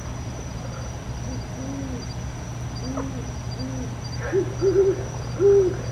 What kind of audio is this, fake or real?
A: real